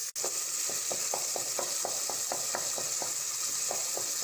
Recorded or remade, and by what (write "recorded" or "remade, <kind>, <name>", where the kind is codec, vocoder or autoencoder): recorded